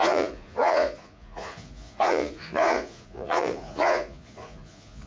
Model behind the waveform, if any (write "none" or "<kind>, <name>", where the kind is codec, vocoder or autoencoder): vocoder, Vocos